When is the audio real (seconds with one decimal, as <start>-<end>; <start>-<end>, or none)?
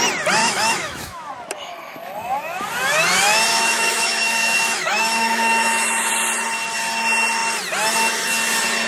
0.0-0.4; 1.3-3.5; 6.1-8.9